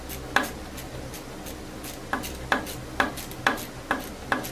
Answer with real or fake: real